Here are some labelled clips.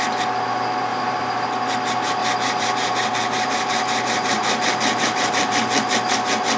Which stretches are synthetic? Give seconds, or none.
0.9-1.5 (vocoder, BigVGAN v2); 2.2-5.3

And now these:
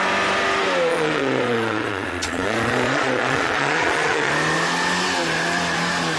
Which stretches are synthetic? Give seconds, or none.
0.9-4.3 (vocoder, Vocos)

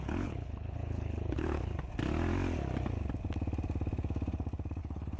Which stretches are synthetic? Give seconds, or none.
0.0-1.7 (codec, HILCodec); 4.8-5.2

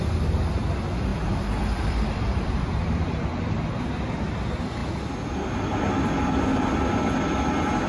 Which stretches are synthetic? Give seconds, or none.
1.1-3.2 (vocoder, BigVGAN v2)

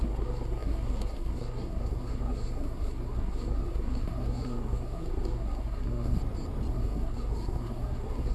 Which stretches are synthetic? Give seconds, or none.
0.0-6.2 (codec, SNAC); 6.7-8.3

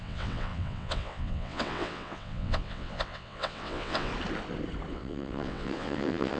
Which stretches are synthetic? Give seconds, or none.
0.0-4.1 (vocoder, WaveNeXt); 4.9-6.4

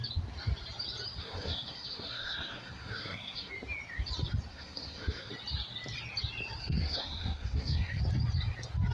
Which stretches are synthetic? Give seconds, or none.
1.2-3.5 (codec, SNAC); 4.5-5.3; 6.6-8.0